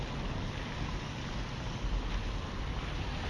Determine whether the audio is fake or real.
real